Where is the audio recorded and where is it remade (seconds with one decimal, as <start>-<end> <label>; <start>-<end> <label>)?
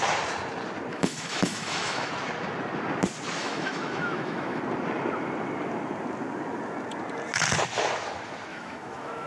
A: 0.0-0.9 recorded; 0.9-2.1 remade; 2.1-3.4 recorded; 3.4-4.6 remade; 4.6-8.5 recorded; 8.5-9.3 remade